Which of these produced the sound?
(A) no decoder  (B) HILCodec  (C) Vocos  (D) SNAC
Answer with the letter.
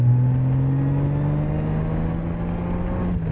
A